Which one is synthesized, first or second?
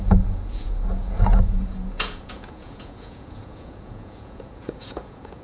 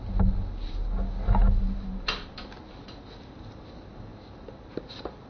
first